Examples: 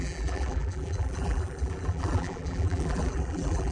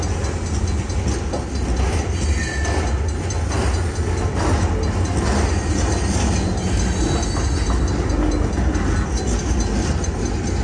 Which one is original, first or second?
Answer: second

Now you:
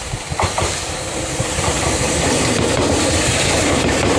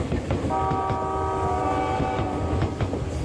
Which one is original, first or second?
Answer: second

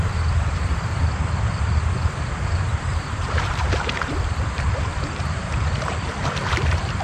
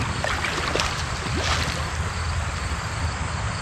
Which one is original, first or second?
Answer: second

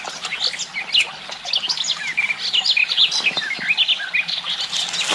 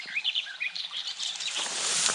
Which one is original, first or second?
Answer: first